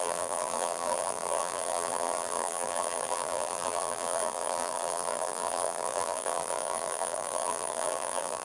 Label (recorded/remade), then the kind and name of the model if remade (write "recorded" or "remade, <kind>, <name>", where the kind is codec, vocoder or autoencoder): remade, vocoder, BigVGAN v2